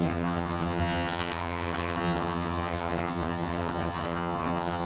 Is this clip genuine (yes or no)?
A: no